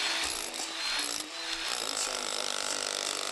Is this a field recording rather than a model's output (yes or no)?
yes